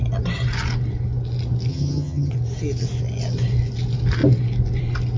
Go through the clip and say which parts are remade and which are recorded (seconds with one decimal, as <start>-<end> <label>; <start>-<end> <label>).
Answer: 0.0-1.7 recorded; 1.7-2.3 remade; 2.3-5.2 recorded